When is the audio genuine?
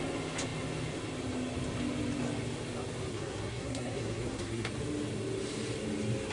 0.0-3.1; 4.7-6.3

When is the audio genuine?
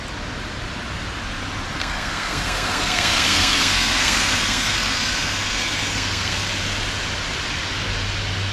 0.0-1.8; 6.5-8.5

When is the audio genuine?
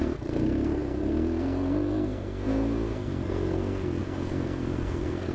none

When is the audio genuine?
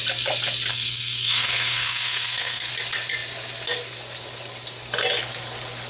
0.0-0.7; 2.7-5.9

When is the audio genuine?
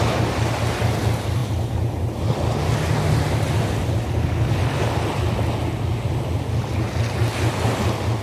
0.0-8.2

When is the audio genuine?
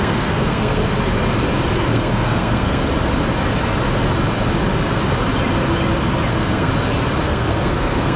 0.8-1.7; 2.8-6.3; 6.7-7.2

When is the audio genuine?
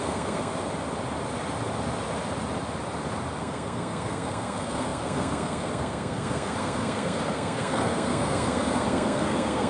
0.5-3.4